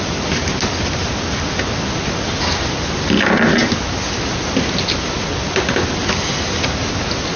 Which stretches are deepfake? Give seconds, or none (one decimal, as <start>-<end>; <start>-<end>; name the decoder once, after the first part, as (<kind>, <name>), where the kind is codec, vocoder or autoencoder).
none